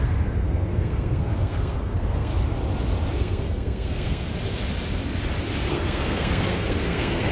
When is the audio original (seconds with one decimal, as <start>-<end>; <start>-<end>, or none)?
2.3-3.1; 4.3-5.7